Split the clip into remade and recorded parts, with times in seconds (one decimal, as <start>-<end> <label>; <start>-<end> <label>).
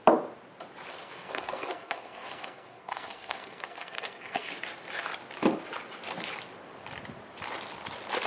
0.0-0.9 recorded; 0.9-4.5 remade; 4.5-8.3 recorded